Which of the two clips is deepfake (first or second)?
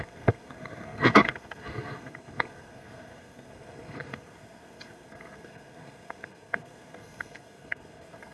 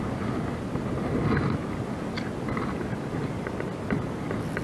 first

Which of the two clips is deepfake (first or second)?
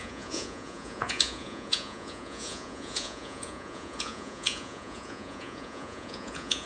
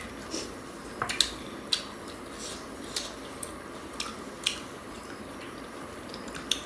first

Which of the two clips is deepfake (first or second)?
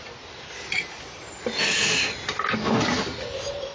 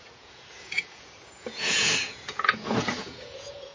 second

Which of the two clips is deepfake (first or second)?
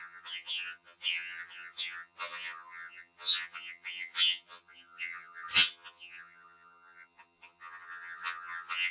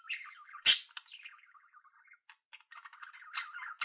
first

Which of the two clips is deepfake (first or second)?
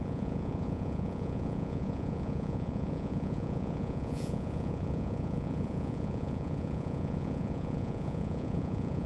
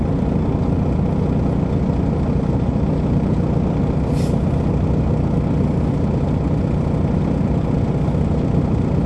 first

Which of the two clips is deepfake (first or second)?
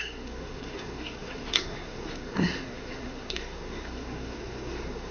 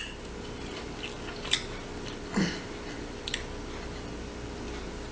first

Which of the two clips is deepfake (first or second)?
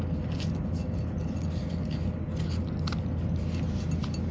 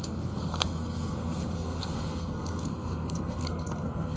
second